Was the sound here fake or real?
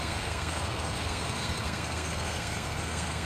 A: fake